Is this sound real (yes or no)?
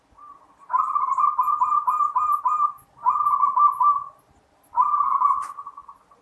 yes